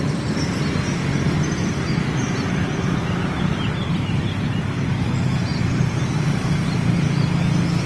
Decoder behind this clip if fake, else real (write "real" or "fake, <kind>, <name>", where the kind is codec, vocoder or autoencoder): real